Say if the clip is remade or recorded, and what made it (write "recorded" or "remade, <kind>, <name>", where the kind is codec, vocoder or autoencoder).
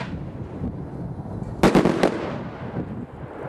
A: recorded